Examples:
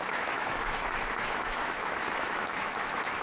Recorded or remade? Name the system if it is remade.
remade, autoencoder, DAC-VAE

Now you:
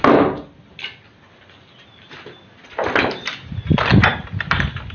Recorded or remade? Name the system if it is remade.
recorded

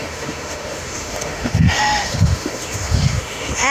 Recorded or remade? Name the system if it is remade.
remade, autoencoder, DAC-VAE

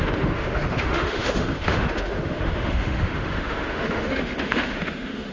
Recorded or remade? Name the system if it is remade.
remade, autoencoder, DAC-VAE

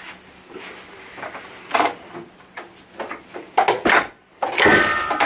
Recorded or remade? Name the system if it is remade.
recorded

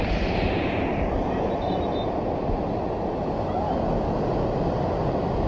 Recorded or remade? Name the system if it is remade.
recorded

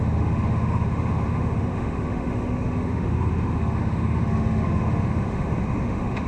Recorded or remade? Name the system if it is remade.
remade, autoencoder, DAC-VAE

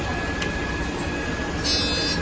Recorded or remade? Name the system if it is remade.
recorded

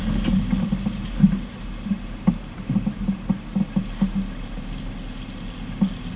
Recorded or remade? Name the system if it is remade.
recorded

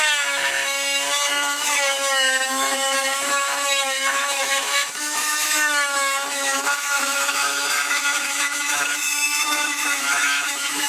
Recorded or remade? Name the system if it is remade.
remade, autoencoder, DAC-VAE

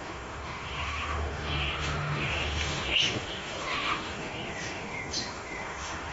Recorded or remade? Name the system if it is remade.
remade, autoencoder, DAC-VAE